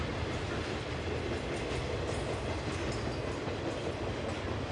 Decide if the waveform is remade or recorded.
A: recorded